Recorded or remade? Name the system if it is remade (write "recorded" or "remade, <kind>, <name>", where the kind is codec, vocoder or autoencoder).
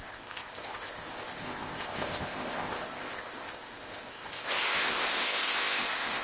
remade, codec, ZipCodec